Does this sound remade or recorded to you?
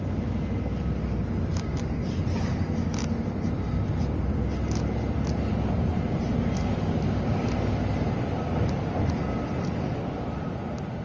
recorded